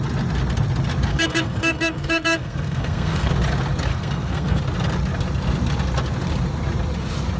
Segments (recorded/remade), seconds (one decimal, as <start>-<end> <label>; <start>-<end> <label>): 0.0-1.1 recorded; 1.1-3.3 remade; 3.3-3.9 recorded; 3.9-4.6 remade; 4.6-7.4 recorded